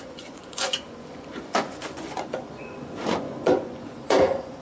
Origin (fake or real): fake